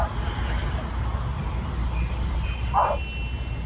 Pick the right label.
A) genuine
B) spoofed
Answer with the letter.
A